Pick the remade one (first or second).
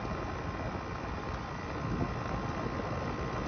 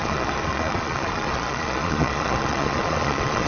second